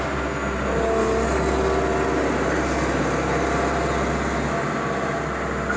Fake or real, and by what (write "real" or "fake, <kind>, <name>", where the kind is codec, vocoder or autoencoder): real